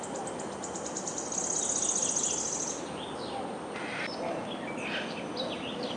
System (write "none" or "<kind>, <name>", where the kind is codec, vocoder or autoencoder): none